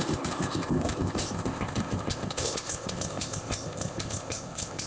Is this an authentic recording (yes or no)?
no